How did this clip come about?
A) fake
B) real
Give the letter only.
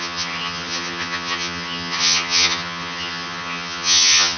A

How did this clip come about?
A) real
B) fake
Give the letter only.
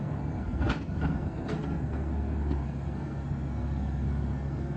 B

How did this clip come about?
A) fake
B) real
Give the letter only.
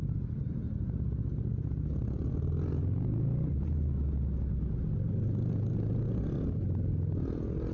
B